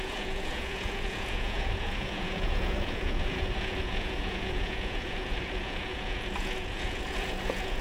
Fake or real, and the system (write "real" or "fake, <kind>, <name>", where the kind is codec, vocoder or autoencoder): fake, vocoder, Vocos